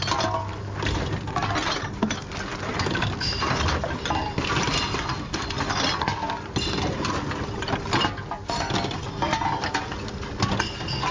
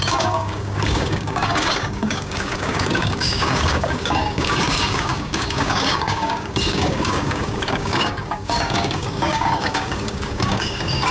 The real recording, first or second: first